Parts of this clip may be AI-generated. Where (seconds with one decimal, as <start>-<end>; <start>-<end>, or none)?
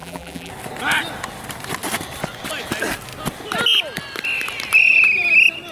0.0-0.5